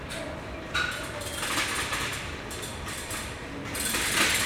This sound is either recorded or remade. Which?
recorded